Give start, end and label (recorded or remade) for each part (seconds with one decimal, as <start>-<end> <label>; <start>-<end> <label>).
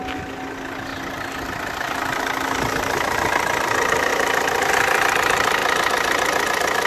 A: 0.0-4.1 recorded; 4.1-4.7 remade; 4.7-6.9 recorded